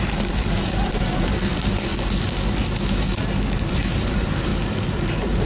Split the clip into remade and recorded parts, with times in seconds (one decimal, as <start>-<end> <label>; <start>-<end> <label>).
0.0-1.9 remade; 1.9-3.7 recorded; 3.7-4.5 remade; 4.5-5.1 recorded; 5.1-5.5 remade